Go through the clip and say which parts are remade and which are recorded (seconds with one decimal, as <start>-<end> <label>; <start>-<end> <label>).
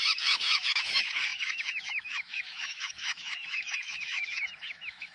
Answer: 0.0-5.1 remade